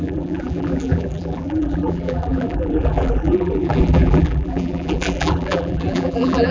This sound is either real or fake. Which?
fake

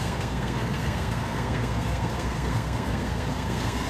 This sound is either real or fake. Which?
fake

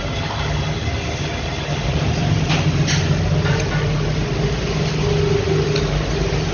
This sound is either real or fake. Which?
real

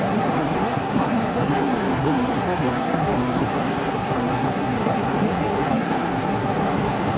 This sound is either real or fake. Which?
fake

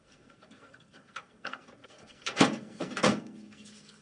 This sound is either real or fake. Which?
fake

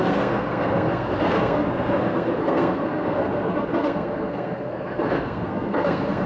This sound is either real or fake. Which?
fake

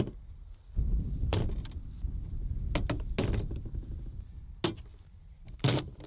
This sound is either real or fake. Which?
real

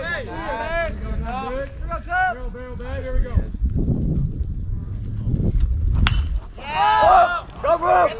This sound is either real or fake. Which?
real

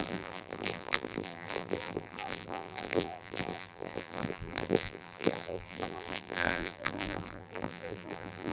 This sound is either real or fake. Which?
fake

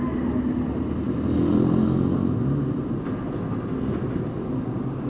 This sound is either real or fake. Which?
real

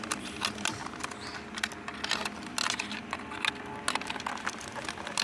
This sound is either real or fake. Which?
real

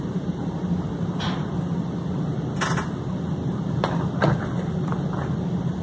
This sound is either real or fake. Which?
real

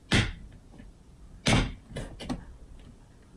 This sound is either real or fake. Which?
real